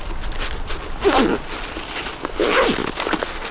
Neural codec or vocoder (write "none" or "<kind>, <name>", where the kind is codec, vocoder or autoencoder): none